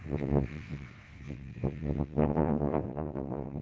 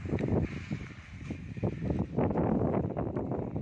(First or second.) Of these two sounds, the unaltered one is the second